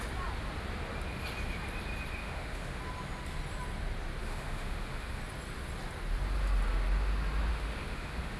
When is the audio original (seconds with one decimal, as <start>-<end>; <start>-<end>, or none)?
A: 0.0-2.2; 2.8-4.2; 5.2-7.5